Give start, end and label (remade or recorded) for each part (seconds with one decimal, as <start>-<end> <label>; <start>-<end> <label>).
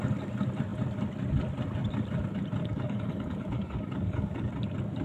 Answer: 0.0-2.6 recorded; 2.6-4.5 remade; 4.5-5.0 recorded